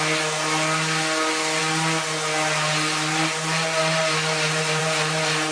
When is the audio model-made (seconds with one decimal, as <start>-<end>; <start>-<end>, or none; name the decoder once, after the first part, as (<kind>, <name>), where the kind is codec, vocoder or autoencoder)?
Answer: none